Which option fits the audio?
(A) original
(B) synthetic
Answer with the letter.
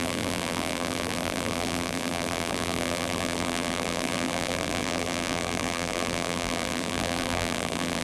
B